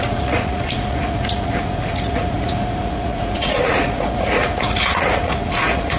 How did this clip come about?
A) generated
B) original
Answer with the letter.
A